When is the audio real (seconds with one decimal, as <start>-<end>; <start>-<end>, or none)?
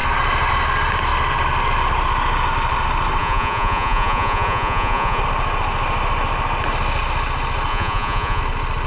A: 0.0-3.2; 5.2-7.7; 8.4-8.9